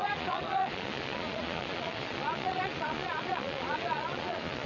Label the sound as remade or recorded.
remade